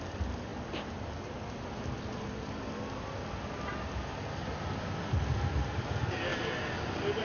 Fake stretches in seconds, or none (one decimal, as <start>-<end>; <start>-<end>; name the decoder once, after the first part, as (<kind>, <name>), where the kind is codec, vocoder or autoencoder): none